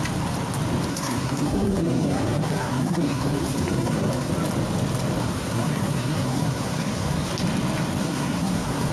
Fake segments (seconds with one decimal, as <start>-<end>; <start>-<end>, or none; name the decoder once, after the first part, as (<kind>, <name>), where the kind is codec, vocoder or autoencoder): 0.9-4.3 (codec, SNAC); 5.2-7.3; 8.0-8.9